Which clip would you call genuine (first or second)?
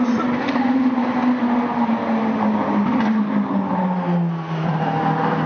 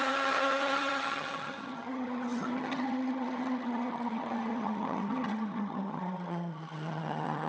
first